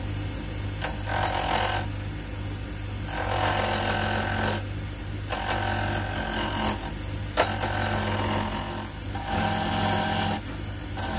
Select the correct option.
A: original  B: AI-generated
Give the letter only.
A